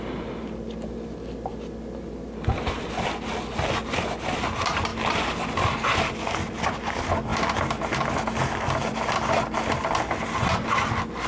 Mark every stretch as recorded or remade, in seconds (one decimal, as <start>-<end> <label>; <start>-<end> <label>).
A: 0.0-11.3 recorded